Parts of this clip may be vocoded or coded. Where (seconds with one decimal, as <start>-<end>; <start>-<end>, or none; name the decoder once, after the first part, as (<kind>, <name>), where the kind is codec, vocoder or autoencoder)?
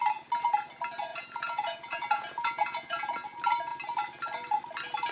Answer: 1.1-3.1 (vocoder, Vocos)